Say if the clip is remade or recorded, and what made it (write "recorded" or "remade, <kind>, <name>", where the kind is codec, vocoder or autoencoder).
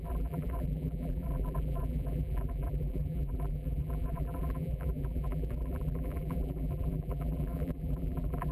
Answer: remade, vocoder, BigVGAN v2